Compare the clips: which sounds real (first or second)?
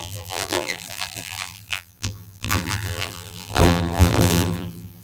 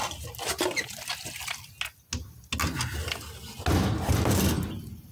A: second